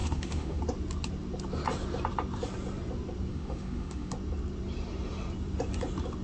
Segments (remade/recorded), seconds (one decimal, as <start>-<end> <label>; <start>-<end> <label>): 0.0-0.6 remade; 0.6-3.3 recorded; 3.3-4.1 remade; 4.1-6.2 recorded